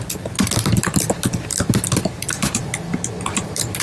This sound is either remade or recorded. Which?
recorded